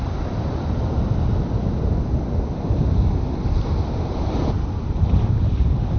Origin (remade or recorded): recorded